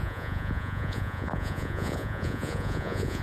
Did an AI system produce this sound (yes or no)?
yes